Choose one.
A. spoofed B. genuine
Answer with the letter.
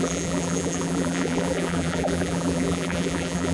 A